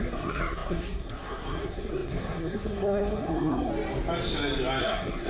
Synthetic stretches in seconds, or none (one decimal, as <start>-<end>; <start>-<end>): 0.0-3.7; 4.8-5.3